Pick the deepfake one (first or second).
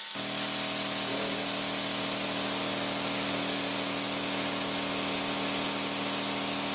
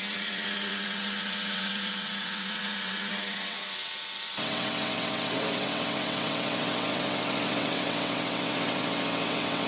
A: second